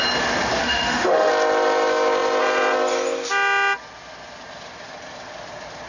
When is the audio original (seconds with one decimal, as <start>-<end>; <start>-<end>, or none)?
0.0-0.6; 1.3-5.9